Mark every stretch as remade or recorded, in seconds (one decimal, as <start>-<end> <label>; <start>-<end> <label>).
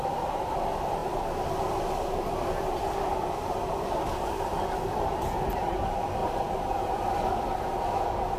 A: 0.0-8.4 recorded